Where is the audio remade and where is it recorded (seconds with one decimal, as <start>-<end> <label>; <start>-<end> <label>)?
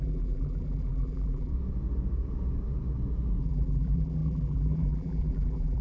0.0-1.5 remade; 1.5-3.4 recorded; 3.4-5.8 remade